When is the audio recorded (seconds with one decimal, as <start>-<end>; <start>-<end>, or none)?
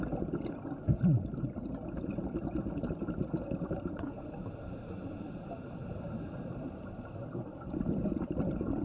0.0-3.2; 7.7-8.8